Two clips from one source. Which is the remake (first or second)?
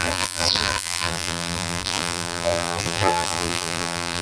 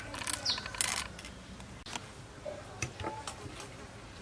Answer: first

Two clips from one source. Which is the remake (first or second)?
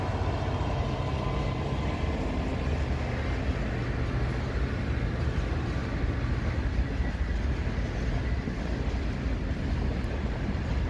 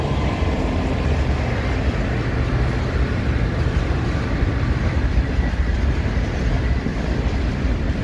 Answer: second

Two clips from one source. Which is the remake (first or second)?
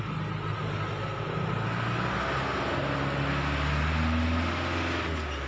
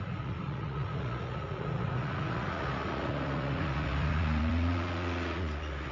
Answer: second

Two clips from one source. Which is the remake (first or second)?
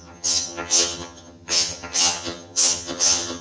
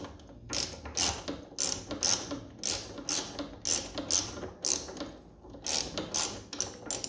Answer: first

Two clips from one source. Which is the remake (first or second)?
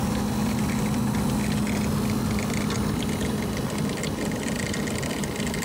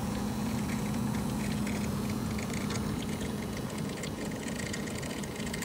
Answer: second